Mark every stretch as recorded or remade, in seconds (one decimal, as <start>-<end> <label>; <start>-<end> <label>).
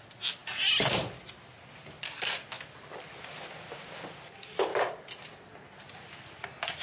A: 0.0-4.7 recorded; 4.7-6.8 remade